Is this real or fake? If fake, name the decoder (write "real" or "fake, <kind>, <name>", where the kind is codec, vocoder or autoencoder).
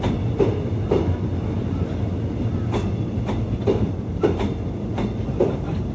real